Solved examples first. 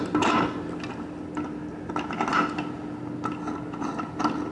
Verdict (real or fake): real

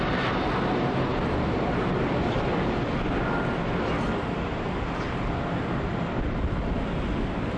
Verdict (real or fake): real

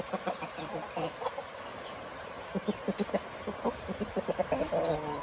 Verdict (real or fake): real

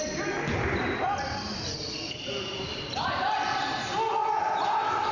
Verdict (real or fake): real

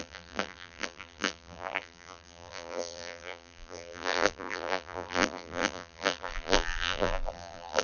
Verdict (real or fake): fake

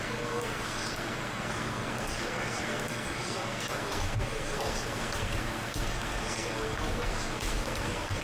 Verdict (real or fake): fake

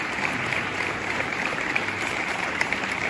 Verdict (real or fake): fake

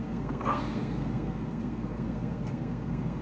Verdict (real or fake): fake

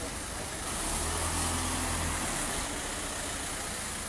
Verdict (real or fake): real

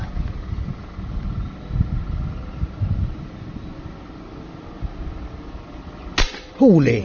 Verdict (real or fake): real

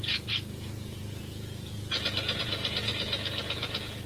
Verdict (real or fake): fake